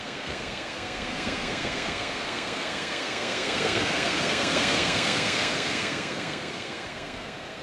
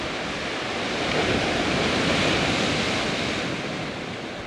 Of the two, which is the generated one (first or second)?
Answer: first